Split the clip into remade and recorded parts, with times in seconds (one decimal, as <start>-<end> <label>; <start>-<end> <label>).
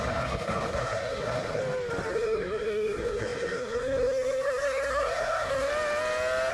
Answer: 0.0-1.6 remade; 1.6-2.1 recorded; 2.1-5.7 remade; 5.7-6.5 recorded